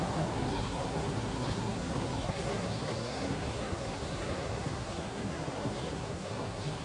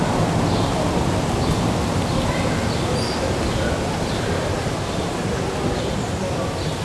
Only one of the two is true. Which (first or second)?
second